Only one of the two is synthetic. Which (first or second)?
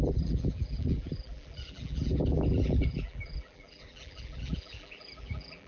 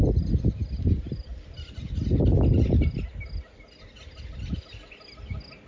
first